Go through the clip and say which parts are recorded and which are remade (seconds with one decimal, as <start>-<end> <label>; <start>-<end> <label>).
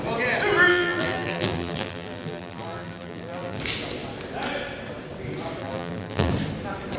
0.0-0.7 recorded; 0.7-3.6 remade; 3.6-5.6 recorded; 5.6-6.3 remade; 6.3-7.0 recorded